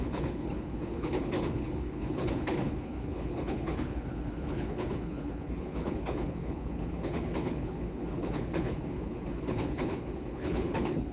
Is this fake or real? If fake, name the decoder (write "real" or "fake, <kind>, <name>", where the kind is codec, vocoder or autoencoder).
fake, codec, HILCodec